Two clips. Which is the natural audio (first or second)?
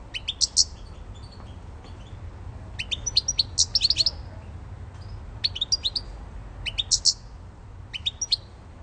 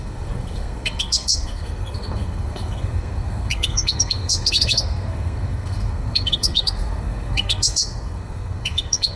first